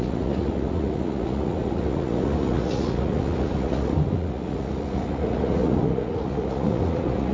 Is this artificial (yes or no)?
yes